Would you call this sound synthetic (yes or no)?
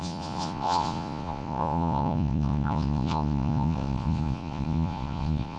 yes